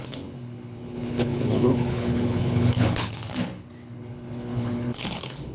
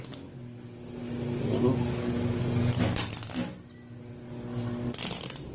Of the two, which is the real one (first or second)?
second